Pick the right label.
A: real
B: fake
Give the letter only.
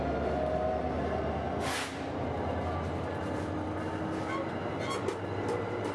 A